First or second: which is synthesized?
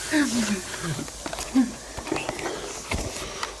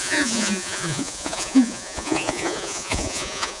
second